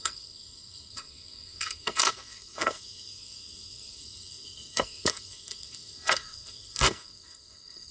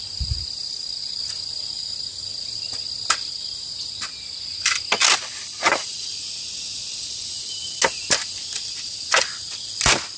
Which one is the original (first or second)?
second